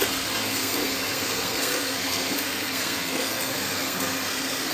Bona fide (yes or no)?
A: no